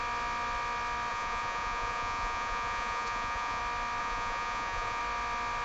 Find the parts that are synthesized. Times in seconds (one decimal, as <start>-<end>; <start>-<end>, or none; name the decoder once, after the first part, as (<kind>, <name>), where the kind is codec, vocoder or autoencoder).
1.1-3.6 (vocoder, Vocos); 4.0-5.0